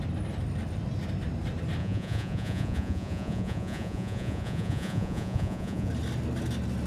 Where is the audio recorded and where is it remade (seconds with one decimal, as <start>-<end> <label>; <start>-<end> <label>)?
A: 0.0-1.8 recorded; 1.8-5.9 remade; 5.9-6.9 recorded

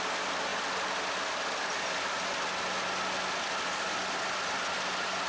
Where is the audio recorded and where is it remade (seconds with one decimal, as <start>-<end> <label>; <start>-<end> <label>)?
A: 0.0-5.3 recorded

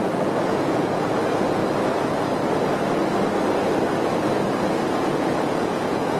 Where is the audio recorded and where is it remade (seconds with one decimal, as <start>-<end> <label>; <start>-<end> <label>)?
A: 0.0-1.6 remade; 1.6-4.9 recorded; 4.9-6.2 remade

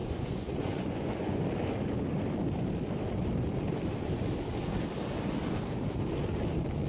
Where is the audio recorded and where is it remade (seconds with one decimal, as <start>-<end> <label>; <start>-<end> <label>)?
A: 0.0-1.4 remade; 1.4-6.9 recorded

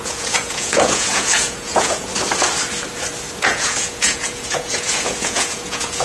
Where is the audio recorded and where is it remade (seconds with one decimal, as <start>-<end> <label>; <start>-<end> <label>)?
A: 0.0-2.1 remade; 2.1-3.4 recorded; 3.4-6.0 remade

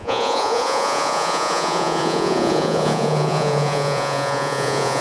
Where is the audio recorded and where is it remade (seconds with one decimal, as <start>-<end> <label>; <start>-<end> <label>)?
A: 0.0-5.0 remade

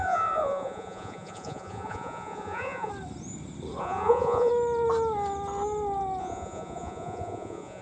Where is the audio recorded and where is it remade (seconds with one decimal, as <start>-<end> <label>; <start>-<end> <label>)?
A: 0.0-2.9 remade; 2.9-3.8 recorded; 3.8-4.5 remade; 4.5-6.2 recorded; 6.2-7.8 remade

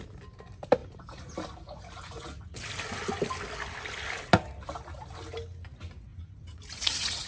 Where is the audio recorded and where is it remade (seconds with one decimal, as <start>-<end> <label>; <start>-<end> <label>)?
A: 0.0-6.1 recorded; 6.1-7.3 remade